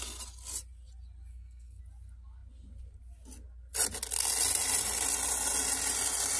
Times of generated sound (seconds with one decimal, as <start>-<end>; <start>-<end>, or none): 1.3-1.8